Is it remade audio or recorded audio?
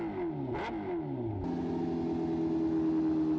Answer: recorded